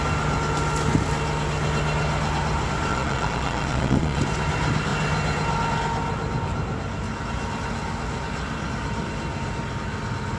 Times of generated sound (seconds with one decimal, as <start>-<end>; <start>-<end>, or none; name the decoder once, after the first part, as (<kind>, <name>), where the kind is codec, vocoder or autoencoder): 2.9-4.2 (vocoder, Vocos)